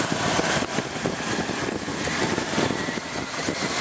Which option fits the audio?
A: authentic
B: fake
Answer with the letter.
A